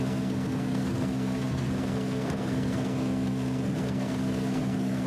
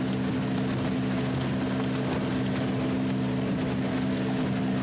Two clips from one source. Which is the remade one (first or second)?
first